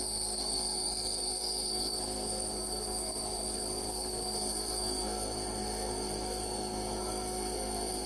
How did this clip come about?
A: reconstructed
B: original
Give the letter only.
A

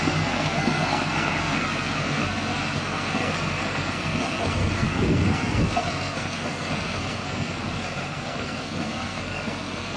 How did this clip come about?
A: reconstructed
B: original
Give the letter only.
A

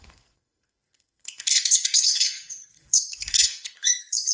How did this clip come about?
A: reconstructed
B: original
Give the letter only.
A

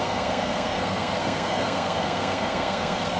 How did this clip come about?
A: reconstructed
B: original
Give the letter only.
A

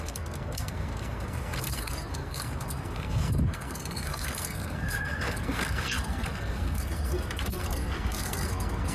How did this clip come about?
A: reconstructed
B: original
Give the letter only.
A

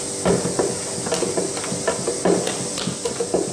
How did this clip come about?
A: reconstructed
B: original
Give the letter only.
B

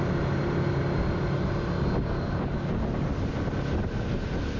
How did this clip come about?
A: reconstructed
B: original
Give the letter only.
B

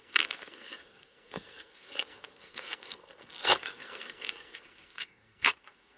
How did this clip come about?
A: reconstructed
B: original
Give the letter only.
A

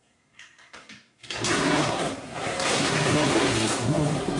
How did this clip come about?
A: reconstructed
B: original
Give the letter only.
A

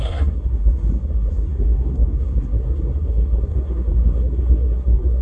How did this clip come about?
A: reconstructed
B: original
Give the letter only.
A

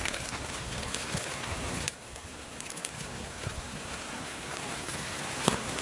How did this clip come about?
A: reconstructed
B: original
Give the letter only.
A